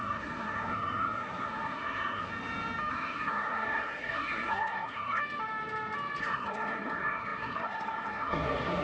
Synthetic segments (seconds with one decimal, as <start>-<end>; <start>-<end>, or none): 0.0-2.3; 2.9-5.2; 6.2-8.8